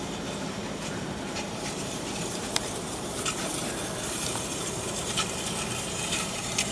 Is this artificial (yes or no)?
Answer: yes